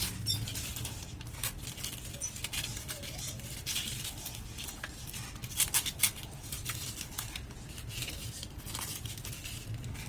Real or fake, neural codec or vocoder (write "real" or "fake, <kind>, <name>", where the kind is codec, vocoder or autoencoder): real